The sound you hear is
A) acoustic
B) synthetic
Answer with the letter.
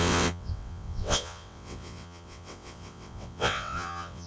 B